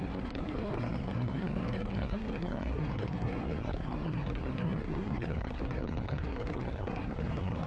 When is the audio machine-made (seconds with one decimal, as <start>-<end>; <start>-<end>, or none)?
0.0-7.7